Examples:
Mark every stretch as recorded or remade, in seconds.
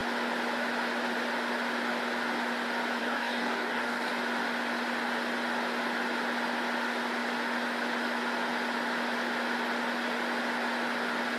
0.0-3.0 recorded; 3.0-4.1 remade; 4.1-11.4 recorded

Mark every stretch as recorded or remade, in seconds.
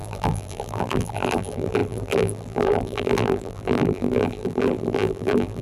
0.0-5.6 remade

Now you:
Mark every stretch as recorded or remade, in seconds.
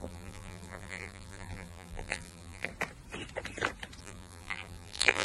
0.0-2.7 remade; 2.7-4.0 recorded; 4.0-5.2 remade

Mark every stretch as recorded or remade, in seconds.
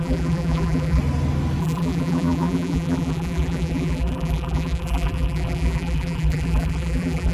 0.0-1.0 remade; 1.0-1.6 recorded; 1.6-7.3 remade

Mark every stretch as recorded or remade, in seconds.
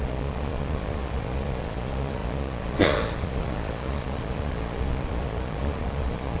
0.0-6.4 remade